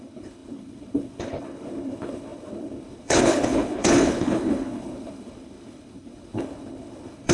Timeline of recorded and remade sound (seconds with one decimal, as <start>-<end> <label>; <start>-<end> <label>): 0.0-7.3 remade

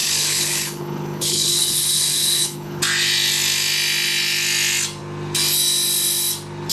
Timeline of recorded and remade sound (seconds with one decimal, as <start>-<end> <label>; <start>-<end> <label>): 0.0-2.8 remade; 2.8-6.7 recorded

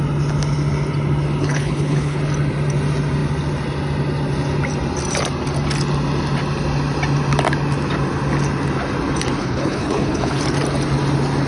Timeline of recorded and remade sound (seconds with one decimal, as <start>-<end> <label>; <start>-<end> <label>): 0.0-1.4 recorded; 1.4-2.2 remade; 2.2-9.4 recorded; 9.4-10.4 remade; 10.4-11.5 recorded